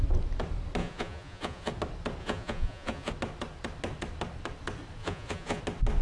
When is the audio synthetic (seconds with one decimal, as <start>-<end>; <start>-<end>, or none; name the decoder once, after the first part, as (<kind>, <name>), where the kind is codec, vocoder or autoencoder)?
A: 0.8-1.7 (vocoder, Vocos); 2.2-3.1; 5.0-5.6

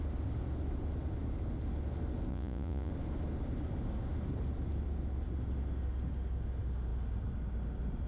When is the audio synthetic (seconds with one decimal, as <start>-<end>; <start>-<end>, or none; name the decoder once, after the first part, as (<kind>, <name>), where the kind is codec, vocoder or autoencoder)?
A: 2.3-2.9 (vocoder, Vocos)

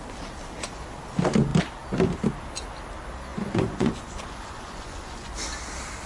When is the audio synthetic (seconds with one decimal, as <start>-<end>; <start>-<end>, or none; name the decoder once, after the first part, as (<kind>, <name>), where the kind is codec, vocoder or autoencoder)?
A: 3.3-5.3 (vocoder, Vocos)